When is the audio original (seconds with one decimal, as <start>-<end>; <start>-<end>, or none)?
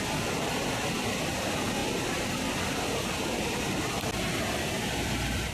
1.8-4.9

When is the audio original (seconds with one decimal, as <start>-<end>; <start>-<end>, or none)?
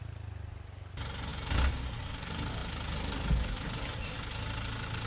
0.0-5.1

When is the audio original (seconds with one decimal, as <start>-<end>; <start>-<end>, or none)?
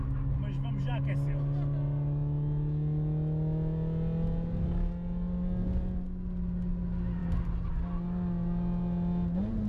0.0-9.7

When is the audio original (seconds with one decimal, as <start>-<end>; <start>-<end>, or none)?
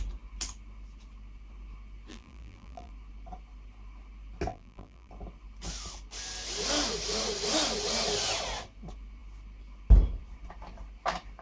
0.0-2.1; 2.9-4.5; 5.1-11.4